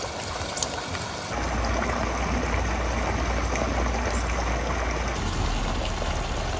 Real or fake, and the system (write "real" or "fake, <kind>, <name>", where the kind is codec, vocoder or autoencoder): real